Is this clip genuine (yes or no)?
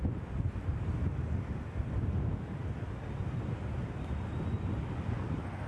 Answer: yes